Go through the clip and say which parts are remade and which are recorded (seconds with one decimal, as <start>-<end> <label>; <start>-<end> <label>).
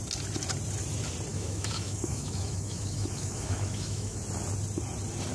0.0-1.3 recorded; 1.3-4.2 remade; 4.2-5.3 recorded